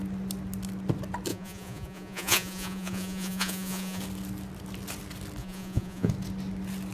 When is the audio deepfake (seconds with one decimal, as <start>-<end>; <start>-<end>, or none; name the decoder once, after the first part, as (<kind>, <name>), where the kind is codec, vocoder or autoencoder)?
1.3-4.0 (vocoder, Vocos); 5.4-6.1